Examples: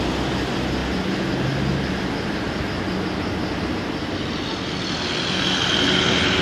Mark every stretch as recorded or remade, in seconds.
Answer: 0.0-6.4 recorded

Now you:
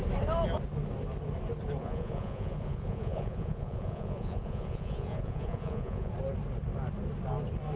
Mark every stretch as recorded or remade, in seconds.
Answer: 0.0-1.8 recorded; 1.8-6.1 remade; 6.1-7.8 recorded

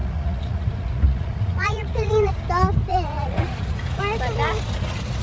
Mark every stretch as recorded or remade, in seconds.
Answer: 0.0-2.3 remade; 2.3-2.9 recorded; 2.9-4.0 remade; 4.0-5.2 recorded

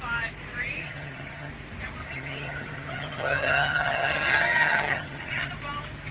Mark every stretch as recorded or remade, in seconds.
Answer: 0.0-0.8 recorded; 0.8-1.5 remade; 1.5-2.0 recorded; 2.0-5.5 remade; 5.5-6.1 recorded

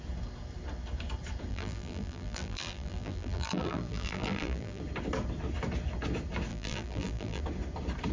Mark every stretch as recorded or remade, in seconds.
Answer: 0.0-1.5 recorded; 1.5-4.8 remade; 4.8-6.5 recorded; 6.5-7.4 remade; 7.4-8.1 recorded

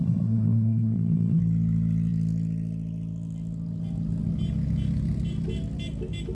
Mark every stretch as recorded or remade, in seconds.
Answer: 0.0-1.4 remade; 1.4-6.3 recorded

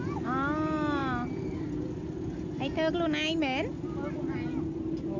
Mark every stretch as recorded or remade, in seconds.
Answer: 0.0-5.2 recorded